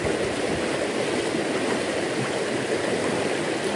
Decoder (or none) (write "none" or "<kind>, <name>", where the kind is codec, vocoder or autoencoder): none